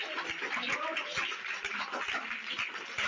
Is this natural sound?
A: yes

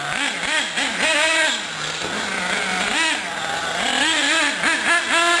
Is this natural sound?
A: yes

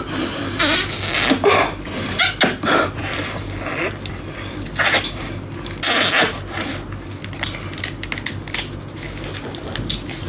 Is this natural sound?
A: yes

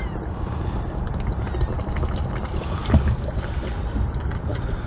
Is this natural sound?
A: yes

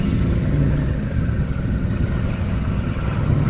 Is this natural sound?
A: no